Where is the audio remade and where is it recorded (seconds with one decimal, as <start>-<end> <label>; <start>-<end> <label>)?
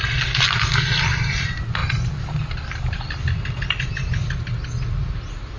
0.0-5.6 recorded